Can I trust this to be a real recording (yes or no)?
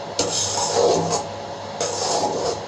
yes